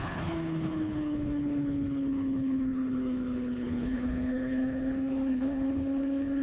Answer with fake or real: fake